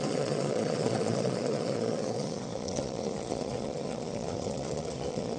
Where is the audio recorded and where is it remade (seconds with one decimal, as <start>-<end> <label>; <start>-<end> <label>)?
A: 0.0-5.4 remade